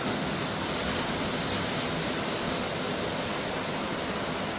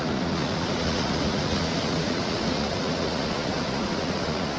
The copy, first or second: second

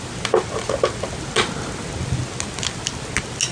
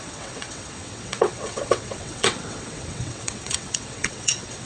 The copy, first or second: second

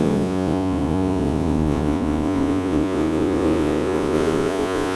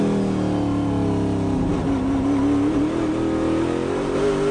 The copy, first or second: first